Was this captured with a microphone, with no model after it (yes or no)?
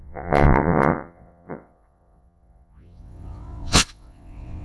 no